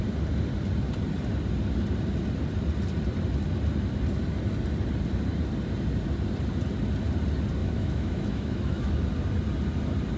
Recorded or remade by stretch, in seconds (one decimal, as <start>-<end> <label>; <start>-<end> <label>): 0.0-7.6 recorded; 7.6-8.9 remade; 8.9-10.2 recorded